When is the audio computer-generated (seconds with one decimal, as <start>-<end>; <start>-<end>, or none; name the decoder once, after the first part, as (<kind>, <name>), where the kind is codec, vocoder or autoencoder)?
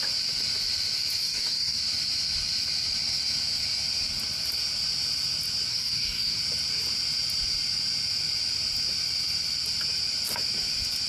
1.2-1.8 (codec, DAC); 5.7-6.4